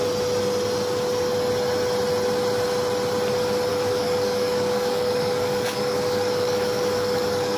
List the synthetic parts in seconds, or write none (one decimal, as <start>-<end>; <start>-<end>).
3.7-7.6